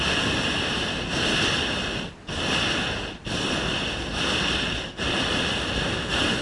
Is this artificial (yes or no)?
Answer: no